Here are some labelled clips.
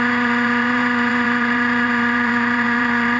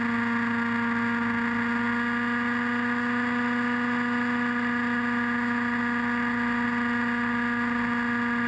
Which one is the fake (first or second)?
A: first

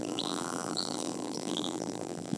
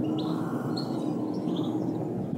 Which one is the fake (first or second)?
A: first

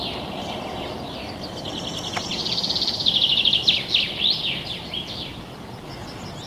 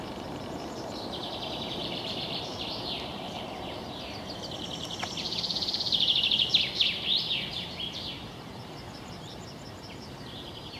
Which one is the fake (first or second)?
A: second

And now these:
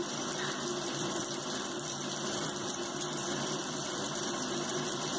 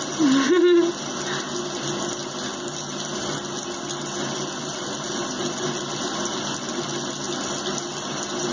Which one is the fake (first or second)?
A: first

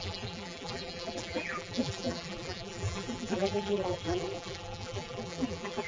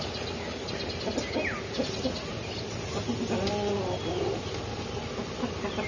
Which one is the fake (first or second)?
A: first